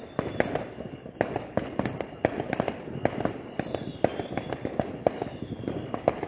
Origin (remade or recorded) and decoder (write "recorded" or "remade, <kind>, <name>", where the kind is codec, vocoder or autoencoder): recorded